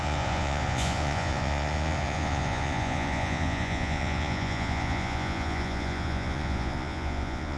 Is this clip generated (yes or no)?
yes